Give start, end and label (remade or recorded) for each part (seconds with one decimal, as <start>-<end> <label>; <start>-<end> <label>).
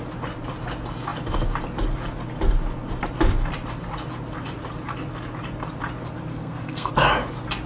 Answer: 0.0-6.3 recorded; 6.3-6.9 remade; 6.9-7.7 recorded